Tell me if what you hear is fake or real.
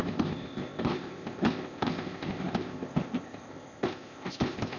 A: fake